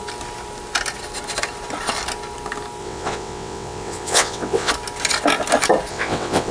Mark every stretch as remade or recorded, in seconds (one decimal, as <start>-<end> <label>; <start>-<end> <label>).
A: 0.0-2.8 recorded; 2.8-4.7 remade; 4.7-5.9 recorded; 5.9-6.5 remade